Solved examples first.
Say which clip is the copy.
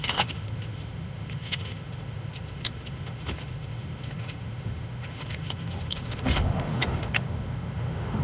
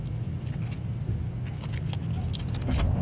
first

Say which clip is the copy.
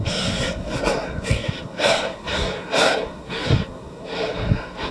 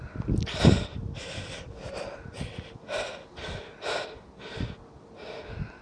first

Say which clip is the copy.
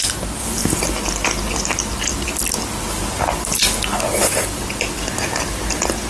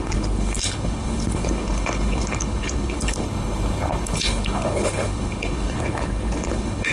second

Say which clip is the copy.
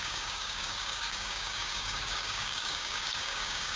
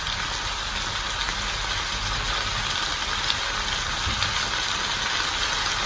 first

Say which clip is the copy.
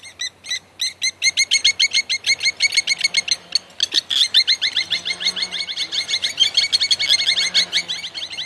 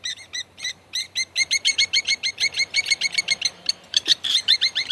second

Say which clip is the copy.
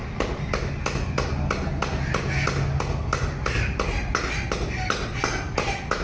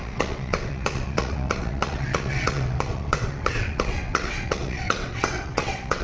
second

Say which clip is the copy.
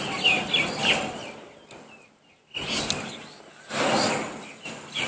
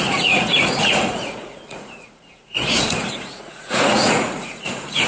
second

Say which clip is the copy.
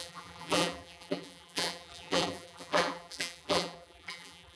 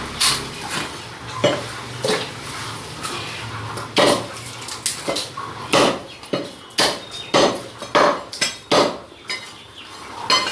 first